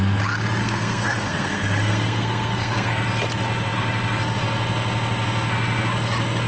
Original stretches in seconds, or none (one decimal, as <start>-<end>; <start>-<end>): 0.0-0.6; 2.9-6.5